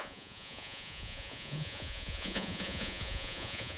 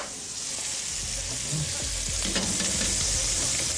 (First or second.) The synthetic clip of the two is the first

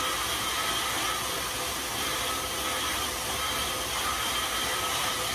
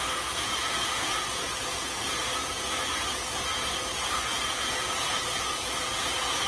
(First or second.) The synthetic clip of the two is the second